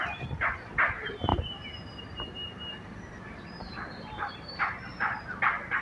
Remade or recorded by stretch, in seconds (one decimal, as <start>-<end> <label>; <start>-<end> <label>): 0.0-1.3 recorded; 1.3-4.6 remade; 4.6-5.8 recorded